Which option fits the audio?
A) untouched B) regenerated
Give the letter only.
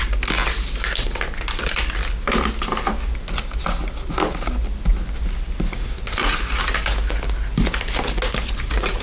A